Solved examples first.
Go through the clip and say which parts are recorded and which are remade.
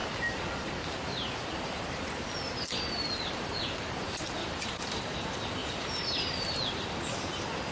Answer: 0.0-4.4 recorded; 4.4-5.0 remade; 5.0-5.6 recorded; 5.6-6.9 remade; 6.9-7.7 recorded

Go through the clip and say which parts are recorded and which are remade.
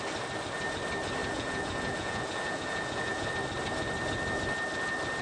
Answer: 0.0-1.2 recorded; 1.2-3.3 remade; 3.3-5.2 recorded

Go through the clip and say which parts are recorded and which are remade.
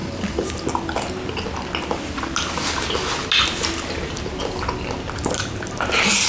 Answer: 0.0-6.3 recorded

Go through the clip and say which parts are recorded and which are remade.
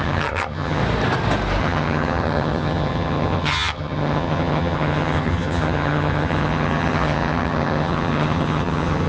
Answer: 0.0-0.8 remade; 0.8-1.6 recorded; 1.6-9.1 remade